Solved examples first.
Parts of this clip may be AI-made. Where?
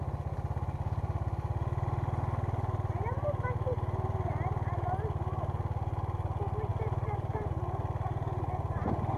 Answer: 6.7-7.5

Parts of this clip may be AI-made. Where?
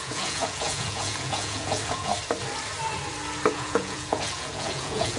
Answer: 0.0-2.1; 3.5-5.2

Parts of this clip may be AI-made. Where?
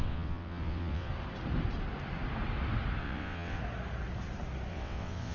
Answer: 0.0-1.1; 3.0-3.6; 4.7-5.3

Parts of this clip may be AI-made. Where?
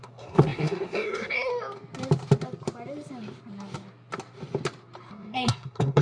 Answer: 0.0-1.5; 5.1-6.0